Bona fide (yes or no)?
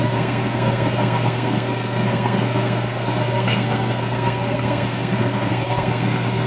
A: no